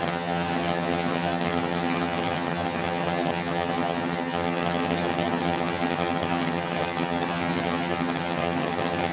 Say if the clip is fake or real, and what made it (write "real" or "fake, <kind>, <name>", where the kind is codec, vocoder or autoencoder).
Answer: fake, vocoder, HiFi-GAN